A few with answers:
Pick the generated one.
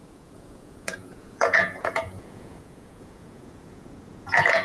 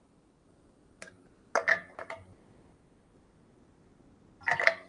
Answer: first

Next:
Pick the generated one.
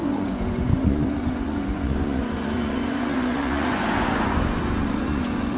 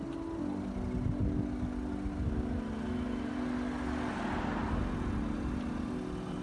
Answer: first